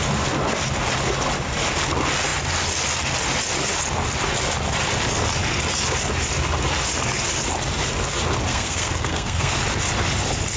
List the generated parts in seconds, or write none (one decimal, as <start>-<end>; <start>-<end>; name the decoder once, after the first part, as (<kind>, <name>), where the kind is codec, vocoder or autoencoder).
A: 8.5-9.6 (codec, SNAC)